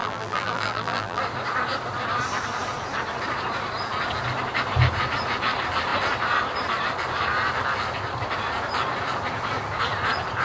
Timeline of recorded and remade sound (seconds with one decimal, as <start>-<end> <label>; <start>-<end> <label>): 0.0-1.2 remade; 1.2-10.4 recorded